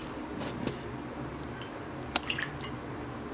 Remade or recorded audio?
recorded